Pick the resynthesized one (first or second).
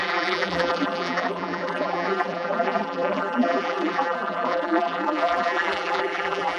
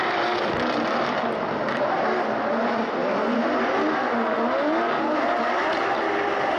first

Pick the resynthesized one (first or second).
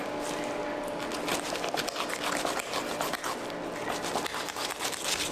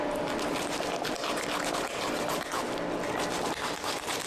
second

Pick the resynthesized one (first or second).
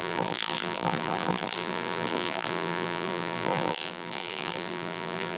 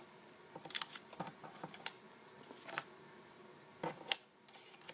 first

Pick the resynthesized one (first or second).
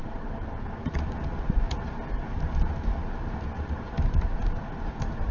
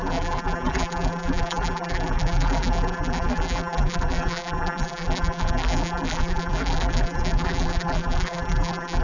second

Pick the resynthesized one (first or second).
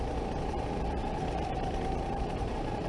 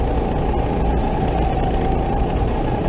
first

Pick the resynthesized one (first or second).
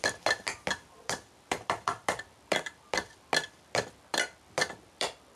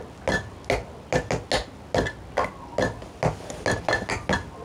first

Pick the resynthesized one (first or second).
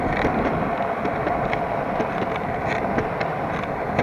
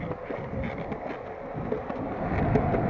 first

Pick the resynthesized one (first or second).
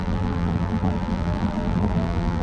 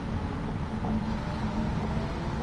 first